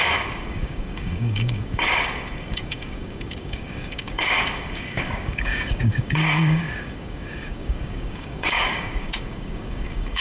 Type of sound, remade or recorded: remade